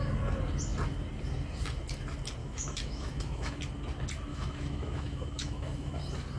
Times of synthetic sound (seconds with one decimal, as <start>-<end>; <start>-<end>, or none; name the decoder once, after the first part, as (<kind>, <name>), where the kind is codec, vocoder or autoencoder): 2.4-3.6 (autoencoder, DAC-VAE); 4.3-6.0